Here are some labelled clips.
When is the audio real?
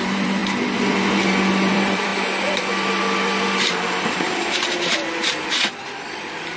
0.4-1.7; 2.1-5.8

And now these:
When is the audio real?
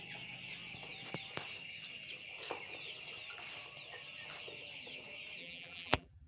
0.0-5.4